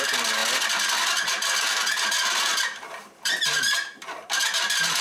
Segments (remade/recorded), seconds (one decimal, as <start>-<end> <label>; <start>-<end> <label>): 0.0-3.0 recorded; 3.0-4.1 remade; 4.1-5.0 recorded